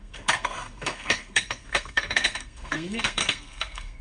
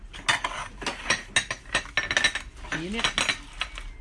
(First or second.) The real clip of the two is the second